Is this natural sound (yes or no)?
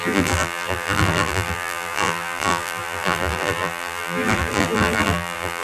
no